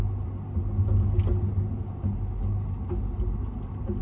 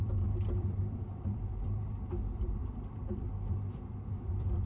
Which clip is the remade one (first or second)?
second